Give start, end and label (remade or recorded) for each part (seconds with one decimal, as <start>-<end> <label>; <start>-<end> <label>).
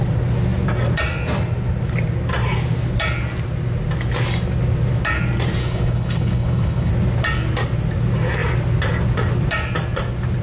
0.0-5.6 recorded; 5.6-6.9 remade; 6.9-10.4 recorded